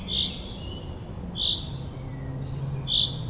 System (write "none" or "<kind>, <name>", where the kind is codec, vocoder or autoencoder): none